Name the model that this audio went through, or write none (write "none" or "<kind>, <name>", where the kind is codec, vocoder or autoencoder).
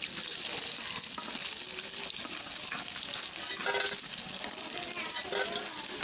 none